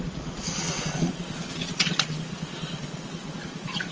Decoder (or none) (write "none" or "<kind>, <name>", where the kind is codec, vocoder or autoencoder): vocoder, Vocos